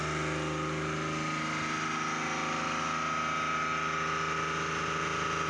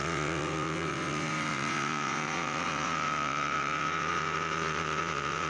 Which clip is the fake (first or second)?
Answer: second